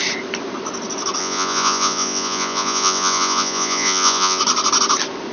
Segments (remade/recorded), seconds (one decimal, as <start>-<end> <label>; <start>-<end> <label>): 0.0-1.2 recorded; 1.2-4.4 remade; 4.4-5.3 recorded